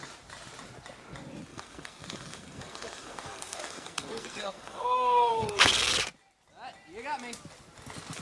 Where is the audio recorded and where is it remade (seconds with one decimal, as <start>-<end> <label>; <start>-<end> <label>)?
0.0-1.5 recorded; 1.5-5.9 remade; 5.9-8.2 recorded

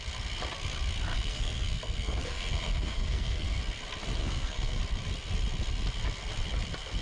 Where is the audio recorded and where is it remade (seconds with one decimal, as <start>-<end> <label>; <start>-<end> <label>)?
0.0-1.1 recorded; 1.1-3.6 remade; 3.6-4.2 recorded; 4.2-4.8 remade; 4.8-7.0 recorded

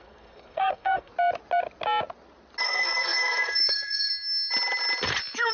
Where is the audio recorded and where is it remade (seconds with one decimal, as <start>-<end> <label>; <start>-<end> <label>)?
0.0-1.1 remade; 1.1-2.6 recorded; 2.6-4.1 remade; 4.1-5.5 recorded

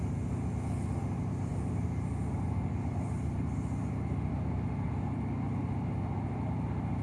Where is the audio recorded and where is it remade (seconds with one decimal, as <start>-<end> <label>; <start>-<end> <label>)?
0.0-7.0 recorded